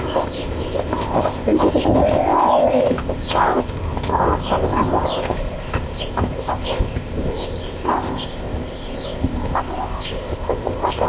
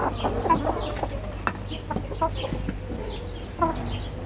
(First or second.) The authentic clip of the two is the second